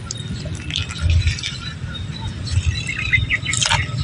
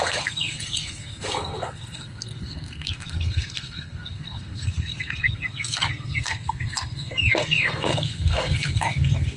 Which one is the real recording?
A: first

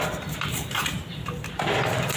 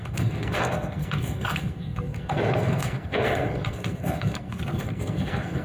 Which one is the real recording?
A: first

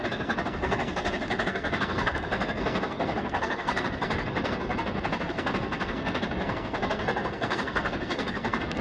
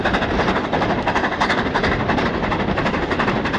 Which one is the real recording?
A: second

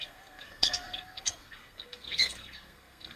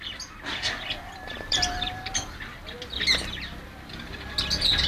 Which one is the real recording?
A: second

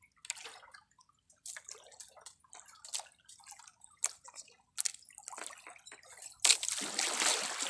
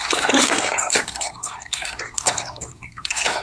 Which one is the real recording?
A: first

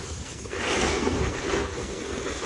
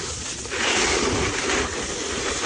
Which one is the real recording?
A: second